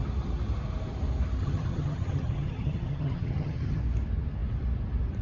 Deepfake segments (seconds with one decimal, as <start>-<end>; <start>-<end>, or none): 1.4-3.8